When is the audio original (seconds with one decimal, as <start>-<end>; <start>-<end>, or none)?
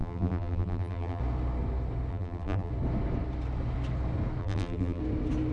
1.2-2.1; 2.7-4.4; 5.0-5.5